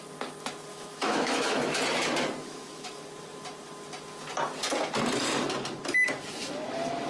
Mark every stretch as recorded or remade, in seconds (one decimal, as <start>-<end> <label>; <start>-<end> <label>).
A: 0.0-0.7 recorded; 0.7-1.8 remade; 1.8-2.4 recorded; 2.4-3.0 remade; 3.0-7.1 recorded